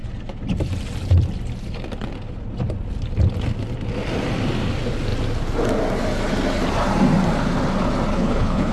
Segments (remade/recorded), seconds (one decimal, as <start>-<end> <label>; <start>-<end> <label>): 0.0-8.1 recorded; 8.1-8.7 remade